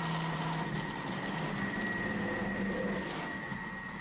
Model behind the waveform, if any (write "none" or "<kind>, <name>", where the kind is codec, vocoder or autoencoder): none